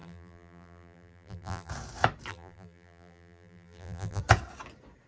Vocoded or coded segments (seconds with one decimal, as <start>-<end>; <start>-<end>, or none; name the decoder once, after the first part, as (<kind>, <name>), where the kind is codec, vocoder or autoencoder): 0.0-1.7 (vocoder, BigVGAN v2); 2.3-4.2